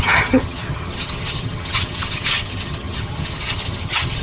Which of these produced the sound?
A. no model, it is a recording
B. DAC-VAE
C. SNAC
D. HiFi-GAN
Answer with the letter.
D